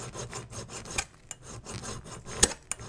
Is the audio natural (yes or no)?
yes